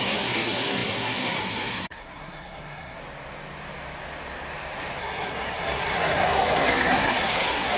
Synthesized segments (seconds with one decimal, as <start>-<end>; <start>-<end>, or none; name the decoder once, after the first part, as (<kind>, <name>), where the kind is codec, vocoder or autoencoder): 0.0-3.0 (codec, SNAC); 5.0-7.8